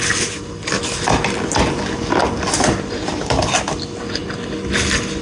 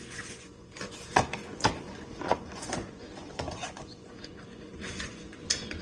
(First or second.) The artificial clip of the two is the second